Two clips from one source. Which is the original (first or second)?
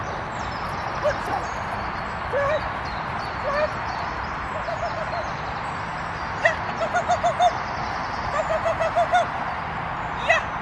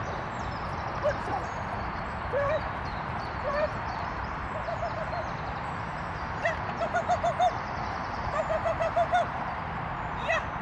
first